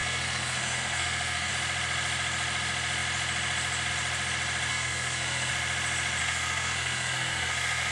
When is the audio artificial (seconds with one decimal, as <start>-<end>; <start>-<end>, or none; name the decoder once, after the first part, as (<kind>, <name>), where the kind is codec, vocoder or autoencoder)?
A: 0.0-1.5 (codec, SNAC); 4.7-5.5; 6.2-7.9